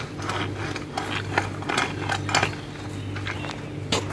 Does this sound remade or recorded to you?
recorded